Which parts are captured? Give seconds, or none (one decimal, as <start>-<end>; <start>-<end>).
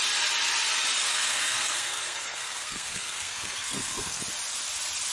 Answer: 0.0-1.1; 4.2-5.1